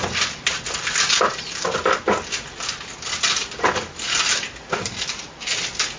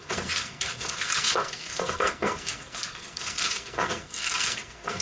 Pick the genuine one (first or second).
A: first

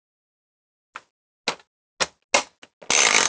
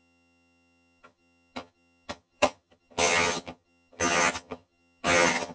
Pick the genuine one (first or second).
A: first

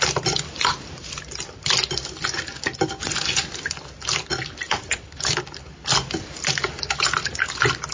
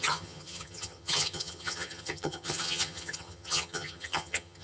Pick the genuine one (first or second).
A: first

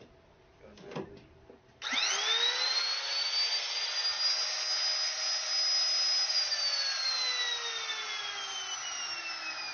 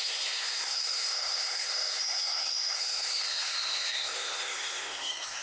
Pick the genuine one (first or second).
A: first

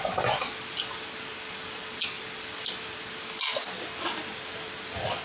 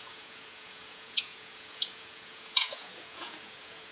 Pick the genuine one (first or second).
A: first